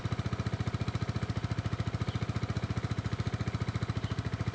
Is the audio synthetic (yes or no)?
no